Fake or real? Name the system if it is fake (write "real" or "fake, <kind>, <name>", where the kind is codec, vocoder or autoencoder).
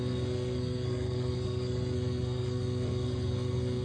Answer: fake, codec, SNAC